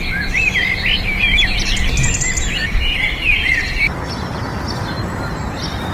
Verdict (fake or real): real